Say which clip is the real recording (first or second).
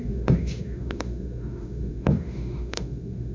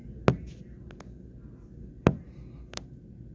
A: second